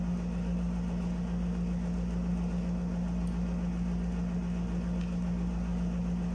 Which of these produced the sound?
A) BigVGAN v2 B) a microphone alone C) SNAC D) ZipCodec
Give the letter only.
B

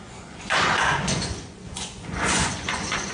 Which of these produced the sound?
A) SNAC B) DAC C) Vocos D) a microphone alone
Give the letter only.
C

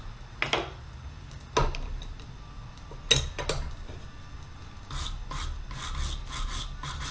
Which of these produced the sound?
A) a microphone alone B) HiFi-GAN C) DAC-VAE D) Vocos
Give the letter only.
A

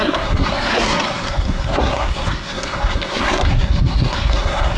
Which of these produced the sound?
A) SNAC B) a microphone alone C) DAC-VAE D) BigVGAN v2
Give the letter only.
A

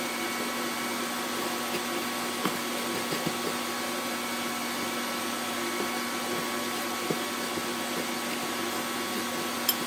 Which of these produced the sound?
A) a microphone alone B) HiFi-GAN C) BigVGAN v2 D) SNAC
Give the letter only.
A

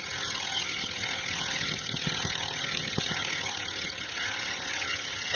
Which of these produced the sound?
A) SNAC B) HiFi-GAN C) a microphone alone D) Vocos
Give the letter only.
B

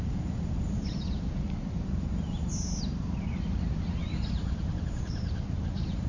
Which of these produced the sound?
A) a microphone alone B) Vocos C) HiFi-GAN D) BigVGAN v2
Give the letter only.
D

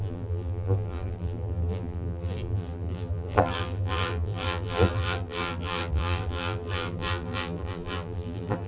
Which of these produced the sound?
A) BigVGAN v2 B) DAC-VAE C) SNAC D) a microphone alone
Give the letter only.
A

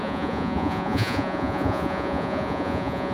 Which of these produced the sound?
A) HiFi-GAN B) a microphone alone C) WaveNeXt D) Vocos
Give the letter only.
D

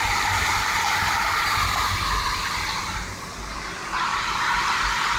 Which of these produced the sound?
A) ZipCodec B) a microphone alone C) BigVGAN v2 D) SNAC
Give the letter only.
B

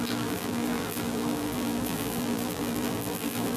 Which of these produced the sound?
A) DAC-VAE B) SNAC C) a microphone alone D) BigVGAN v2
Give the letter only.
D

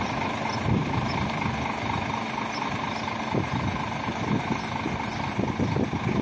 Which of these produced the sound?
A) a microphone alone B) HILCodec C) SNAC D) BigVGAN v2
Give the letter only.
A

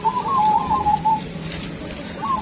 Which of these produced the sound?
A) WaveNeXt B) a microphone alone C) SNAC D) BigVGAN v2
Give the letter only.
D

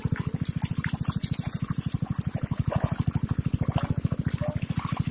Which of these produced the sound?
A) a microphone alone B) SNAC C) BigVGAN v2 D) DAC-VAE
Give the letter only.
A